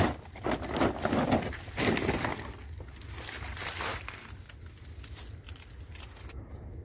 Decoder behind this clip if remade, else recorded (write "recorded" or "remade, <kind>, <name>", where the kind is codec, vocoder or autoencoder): recorded